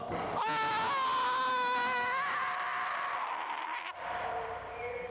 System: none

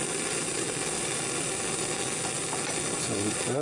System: none